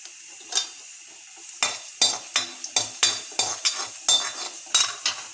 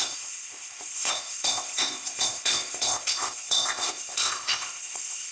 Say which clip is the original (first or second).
first